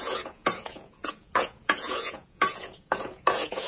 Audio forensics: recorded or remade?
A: remade